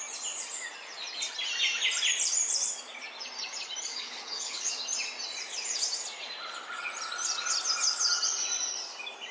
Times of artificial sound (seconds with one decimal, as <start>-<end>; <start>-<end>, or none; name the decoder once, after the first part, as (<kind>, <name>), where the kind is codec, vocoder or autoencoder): 3.9-4.7 (codec, HILCodec)